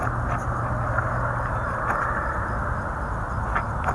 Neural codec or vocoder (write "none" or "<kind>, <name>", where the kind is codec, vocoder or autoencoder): none